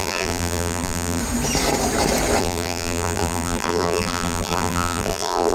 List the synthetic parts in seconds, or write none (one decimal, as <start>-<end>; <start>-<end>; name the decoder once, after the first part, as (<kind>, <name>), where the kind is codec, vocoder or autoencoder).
0.0-1.2 (vocoder, BigVGAN v2); 2.4-5.5